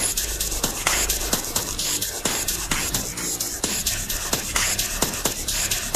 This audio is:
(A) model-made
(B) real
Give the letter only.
B